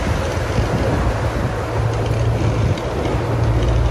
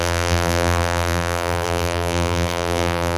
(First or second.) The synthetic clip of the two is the second